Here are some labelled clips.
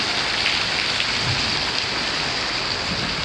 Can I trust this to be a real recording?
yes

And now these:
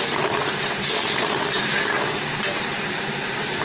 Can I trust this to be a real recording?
yes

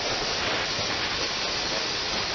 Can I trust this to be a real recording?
yes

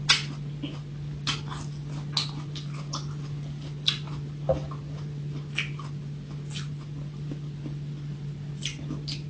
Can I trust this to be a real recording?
yes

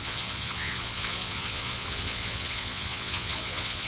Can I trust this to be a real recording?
no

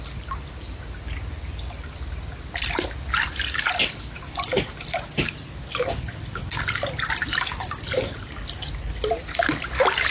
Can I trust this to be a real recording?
yes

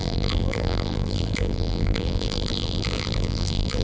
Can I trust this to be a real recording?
no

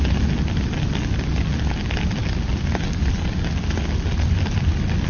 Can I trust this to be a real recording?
yes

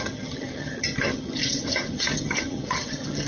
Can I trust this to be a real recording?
no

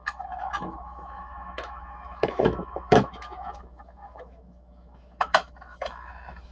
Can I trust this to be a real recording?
no